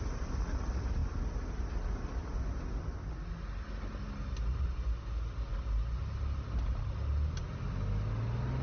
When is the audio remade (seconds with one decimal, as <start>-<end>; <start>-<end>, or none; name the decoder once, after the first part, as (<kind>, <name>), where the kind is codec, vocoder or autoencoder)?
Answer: none

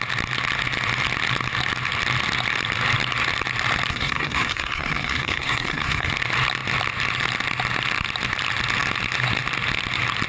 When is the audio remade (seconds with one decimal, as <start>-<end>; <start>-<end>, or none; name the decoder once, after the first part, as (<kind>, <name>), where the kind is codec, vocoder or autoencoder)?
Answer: 3.9-6.1 (codec, SNAC)

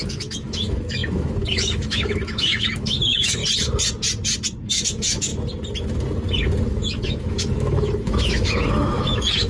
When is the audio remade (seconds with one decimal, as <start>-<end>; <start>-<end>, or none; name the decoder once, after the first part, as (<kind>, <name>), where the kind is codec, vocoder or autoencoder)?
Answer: 0.0-3.4 (autoencoder, DAC-VAE); 4.7-5.3; 6.7-9.5